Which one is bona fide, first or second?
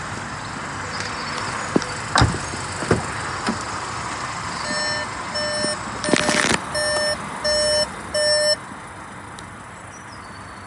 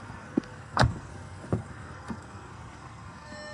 first